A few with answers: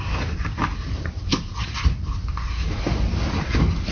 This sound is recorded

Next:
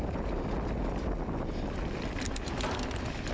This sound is recorded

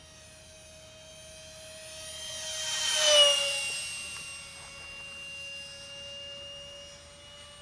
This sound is recorded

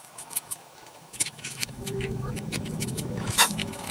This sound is remade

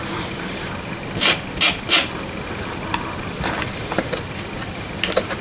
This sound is recorded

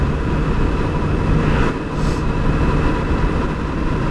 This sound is recorded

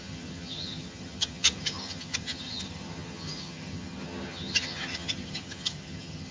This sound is remade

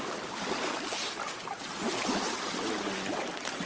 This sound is recorded